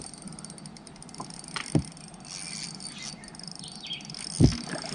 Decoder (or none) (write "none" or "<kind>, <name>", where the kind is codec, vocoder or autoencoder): none